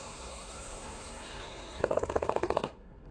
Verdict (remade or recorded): remade